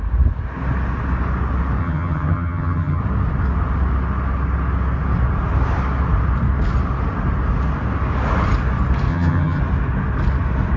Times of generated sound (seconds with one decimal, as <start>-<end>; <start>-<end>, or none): 1.8-3.0; 9.1-9.6